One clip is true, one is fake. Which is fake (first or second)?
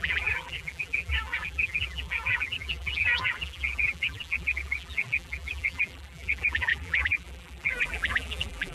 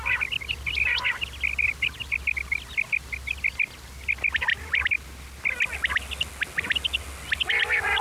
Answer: first